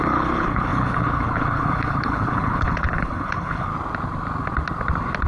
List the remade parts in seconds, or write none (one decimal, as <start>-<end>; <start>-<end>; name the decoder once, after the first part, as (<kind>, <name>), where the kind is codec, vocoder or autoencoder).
0.0-3.7 (codec, HILCodec)

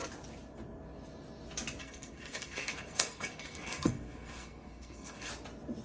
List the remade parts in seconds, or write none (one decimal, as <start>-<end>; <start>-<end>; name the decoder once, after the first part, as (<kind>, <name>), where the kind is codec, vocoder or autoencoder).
1.8-5.3 (codec, SNAC)

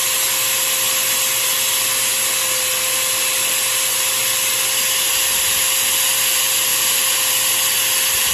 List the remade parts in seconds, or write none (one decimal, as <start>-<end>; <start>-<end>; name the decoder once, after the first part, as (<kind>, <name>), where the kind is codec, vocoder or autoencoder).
6.7-7.3 (vocoder, BigVGAN v2)

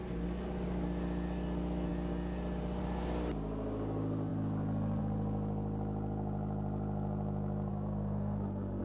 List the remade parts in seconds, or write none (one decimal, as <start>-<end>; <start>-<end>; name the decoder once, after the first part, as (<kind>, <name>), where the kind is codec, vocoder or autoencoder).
7.7-8.8 (codec, SNAC)

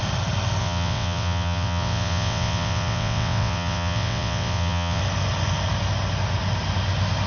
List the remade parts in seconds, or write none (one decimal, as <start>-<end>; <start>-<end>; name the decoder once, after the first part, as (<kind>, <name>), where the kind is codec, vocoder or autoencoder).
0.6-5.0 (vocoder, WaveNeXt)

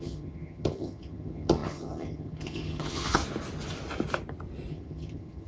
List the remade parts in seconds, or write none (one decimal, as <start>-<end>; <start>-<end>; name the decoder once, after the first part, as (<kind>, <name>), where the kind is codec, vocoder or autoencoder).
0.0-3.2 (vocoder, HiFi-GAN); 4.7-5.5

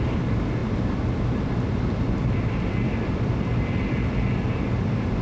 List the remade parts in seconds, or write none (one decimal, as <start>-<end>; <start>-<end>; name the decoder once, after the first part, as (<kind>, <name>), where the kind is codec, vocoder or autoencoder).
none

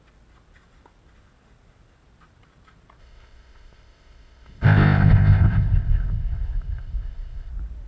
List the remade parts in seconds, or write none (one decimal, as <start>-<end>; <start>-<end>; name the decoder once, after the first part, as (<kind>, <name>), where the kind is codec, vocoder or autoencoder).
3.0-7.5 (codec, ZipCodec)